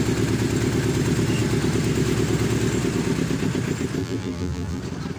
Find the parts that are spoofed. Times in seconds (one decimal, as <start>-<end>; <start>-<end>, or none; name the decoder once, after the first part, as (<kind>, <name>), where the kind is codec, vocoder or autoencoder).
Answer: 4.0-4.8 (vocoder, BigVGAN v2)